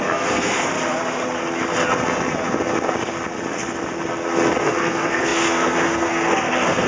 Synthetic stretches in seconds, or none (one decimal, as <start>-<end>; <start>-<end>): 0.0-0.7; 4.6-6.9